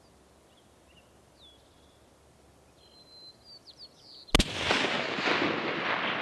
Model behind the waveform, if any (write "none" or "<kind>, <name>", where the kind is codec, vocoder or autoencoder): none